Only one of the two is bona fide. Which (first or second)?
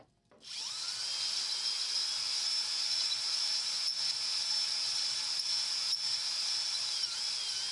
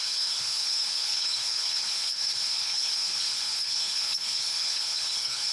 first